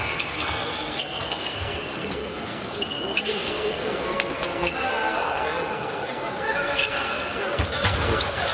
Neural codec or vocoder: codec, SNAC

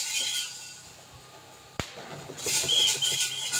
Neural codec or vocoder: none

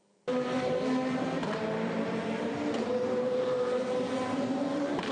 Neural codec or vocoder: vocoder, BigVGAN v2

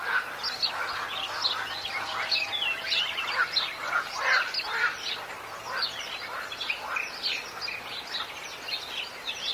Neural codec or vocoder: none